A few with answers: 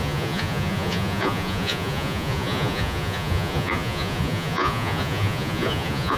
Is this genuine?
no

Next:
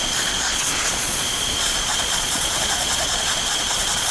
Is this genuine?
no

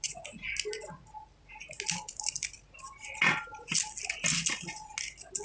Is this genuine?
yes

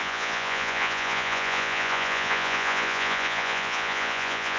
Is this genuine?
no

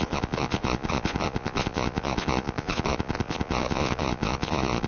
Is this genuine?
no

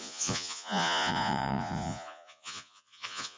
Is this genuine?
no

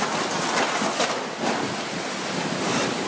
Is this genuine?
yes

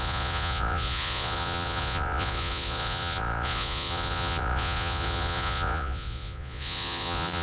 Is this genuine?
no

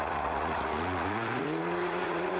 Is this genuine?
no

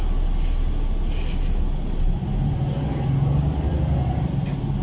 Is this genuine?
yes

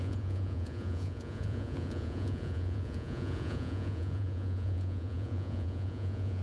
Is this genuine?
no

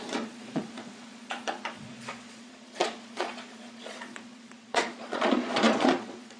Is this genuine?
no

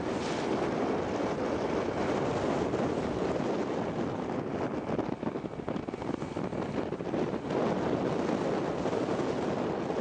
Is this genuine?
yes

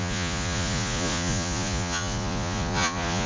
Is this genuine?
no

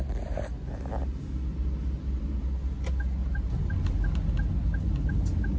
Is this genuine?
yes